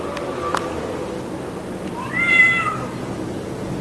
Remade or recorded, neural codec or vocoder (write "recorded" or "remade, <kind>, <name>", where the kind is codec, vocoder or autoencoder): recorded